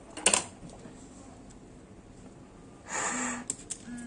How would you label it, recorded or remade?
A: recorded